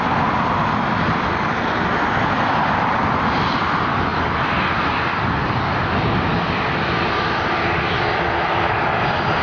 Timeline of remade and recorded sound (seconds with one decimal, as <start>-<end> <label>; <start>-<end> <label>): 0.0-9.4 recorded